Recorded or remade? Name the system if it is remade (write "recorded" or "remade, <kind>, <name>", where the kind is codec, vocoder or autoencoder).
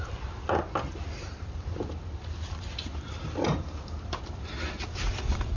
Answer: remade, vocoder, BigVGAN v2